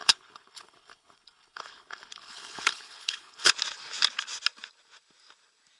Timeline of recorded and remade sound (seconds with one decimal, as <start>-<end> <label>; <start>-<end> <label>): 0.0-3.5 remade; 3.5-5.8 recorded